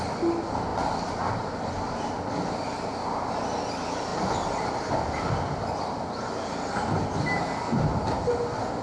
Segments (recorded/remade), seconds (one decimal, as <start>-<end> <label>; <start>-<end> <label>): 0.0-8.8 recorded